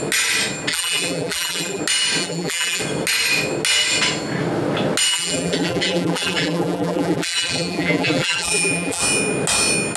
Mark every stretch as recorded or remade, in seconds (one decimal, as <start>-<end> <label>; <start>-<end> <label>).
0.0-0.7 recorded; 0.7-1.8 remade; 1.8-2.2 recorded; 2.2-2.8 remade; 2.8-5.1 recorded; 5.1-9.0 remade; 9.0-10.0 recorded